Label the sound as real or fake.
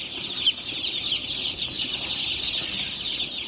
real